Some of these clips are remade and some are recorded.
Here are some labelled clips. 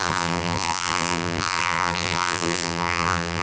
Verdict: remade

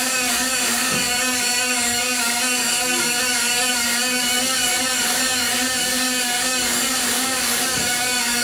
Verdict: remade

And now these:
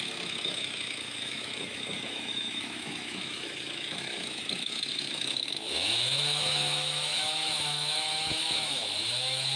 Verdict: remade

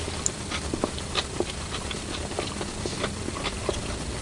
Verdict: recorded